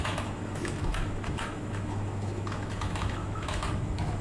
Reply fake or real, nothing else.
fake